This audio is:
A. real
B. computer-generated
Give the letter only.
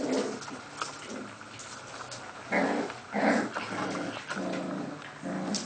A